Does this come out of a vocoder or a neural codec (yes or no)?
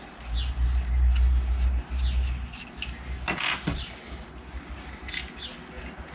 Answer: no